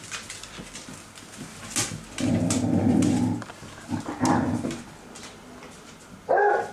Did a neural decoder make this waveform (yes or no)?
no